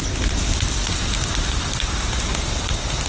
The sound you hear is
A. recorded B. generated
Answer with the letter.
A